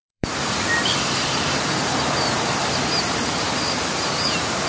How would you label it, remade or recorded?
remade